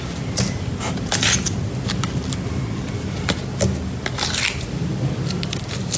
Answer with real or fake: real